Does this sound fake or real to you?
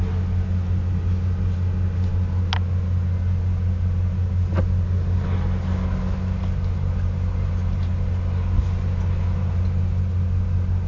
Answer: real